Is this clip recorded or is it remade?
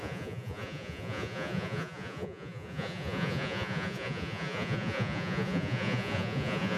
remade